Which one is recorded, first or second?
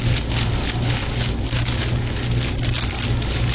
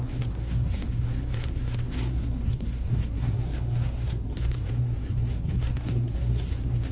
first